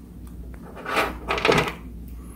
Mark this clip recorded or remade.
recorded